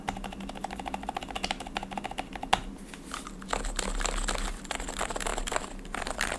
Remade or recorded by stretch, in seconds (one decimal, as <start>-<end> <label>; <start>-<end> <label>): 0.0-6.4 recorded